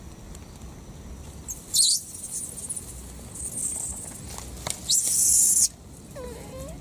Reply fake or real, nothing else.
real